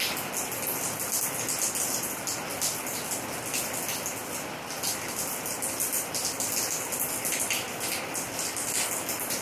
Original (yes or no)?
yes